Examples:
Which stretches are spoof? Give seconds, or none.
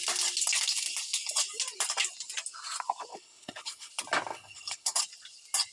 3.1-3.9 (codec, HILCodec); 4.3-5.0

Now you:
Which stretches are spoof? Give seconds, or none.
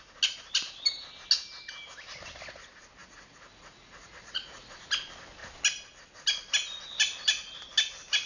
3.0-4.9 (vocoder, Vocos)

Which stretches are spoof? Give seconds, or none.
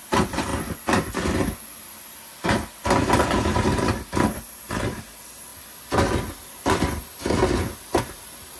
0.0-0.5 (vocoder, BigVGAN v2); 3.3-3.7; 4.6-5.5; 8.0-8.6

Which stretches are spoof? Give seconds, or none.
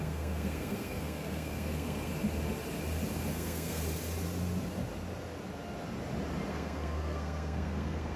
0.0-2.1 (codec, SNAC); 3.3-3.8; 6.5-8.2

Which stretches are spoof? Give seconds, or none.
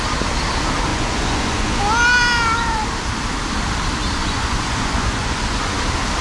0.9-1.8 (vocoder, Vocos); 4.2-5.8